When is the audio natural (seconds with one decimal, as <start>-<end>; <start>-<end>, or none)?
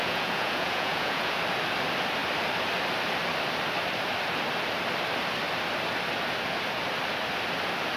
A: 1.4-8.0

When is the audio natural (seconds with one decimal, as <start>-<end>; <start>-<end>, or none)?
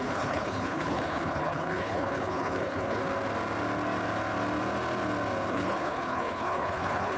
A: 3.0-5.5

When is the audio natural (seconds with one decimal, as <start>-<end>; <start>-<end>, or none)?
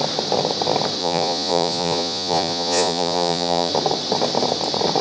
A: 0.0-1.0; 3.7-5.0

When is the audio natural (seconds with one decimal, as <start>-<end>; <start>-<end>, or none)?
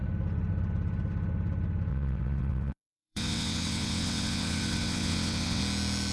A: 0.0-1.9; 5.6-6.1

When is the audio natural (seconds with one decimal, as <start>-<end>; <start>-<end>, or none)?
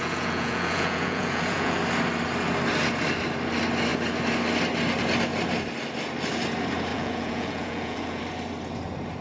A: 1.8-6.9; 8.2-9.2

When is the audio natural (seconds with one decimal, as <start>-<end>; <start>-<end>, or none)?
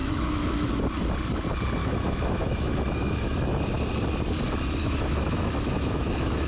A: 0.7-1.8; 3.5-4.8